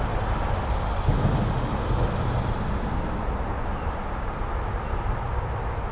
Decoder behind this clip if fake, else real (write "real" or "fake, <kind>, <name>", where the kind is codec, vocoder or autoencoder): real